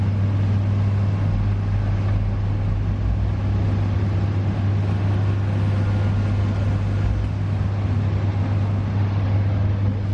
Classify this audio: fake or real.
real